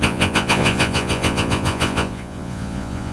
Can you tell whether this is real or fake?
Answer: fake